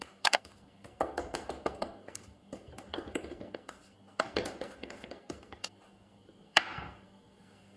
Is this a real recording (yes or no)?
no